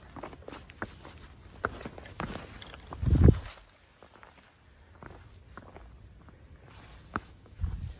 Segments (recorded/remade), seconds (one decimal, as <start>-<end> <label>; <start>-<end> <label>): 0.0-7.1 recorded; 7.1-7.6 remade; 7.6-8.0 recorded